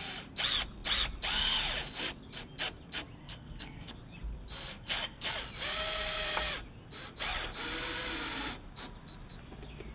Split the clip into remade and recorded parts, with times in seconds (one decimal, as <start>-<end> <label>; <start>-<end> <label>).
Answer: 0.0-3.2 recorded; 3.2-3.9 remade; 3.9-4.7 recorded; 4.7-5.3 remade; 5.3-9.9 recorded